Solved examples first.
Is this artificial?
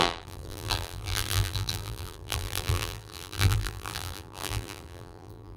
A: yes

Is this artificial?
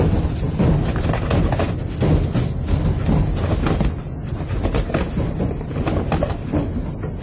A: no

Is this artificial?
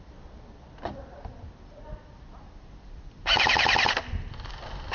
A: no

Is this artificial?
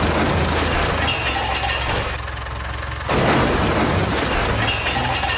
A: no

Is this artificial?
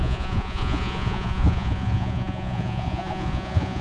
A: yes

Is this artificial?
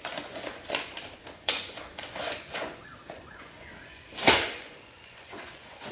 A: yes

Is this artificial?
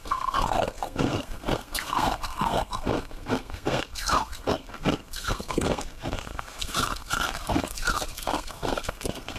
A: yes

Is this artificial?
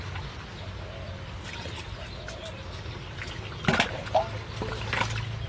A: no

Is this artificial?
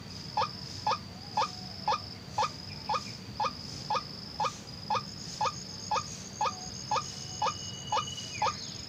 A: no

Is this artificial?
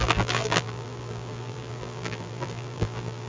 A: yes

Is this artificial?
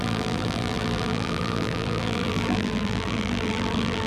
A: yes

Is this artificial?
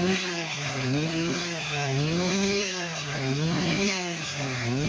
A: yes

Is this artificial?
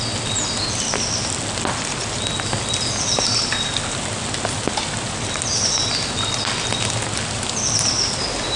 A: no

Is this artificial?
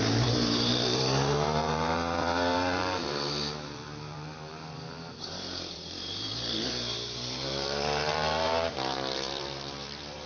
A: yes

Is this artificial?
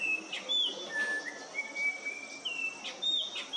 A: no